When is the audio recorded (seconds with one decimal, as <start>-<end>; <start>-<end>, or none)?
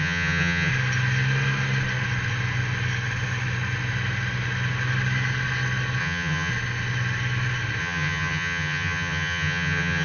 0.7-6.0; 6.5-7.8